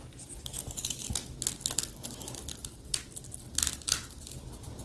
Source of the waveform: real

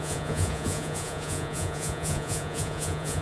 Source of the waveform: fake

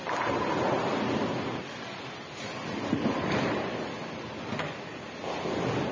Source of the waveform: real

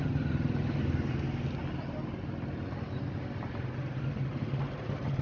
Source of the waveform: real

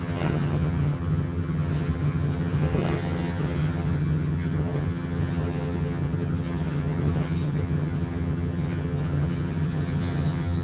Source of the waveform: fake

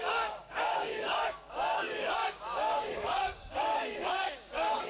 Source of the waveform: fake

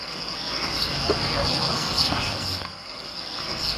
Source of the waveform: fake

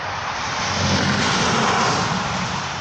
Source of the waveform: real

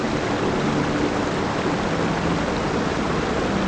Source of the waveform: real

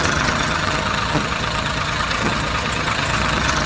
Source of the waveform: fake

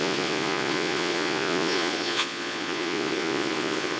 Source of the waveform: fake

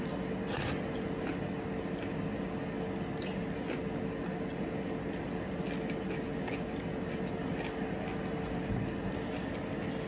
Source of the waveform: real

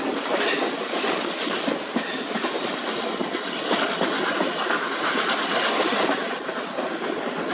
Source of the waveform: real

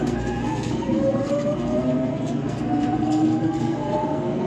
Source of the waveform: fake